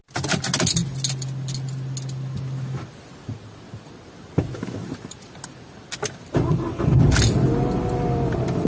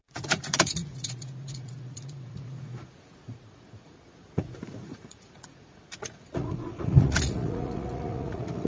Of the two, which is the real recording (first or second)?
first